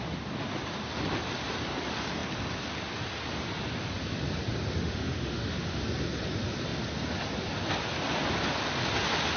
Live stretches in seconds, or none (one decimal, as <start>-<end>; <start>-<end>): 0.0-4.8; 5.8-9.4